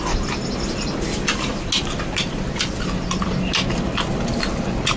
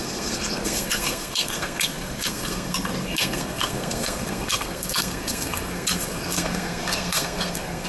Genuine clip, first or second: first